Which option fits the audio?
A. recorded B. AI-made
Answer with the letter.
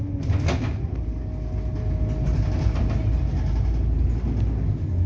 A